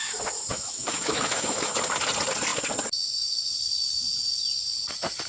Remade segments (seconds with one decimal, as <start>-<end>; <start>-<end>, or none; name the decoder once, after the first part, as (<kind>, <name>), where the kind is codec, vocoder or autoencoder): 0.5-1.8 (autoencoder, DAC-VAE)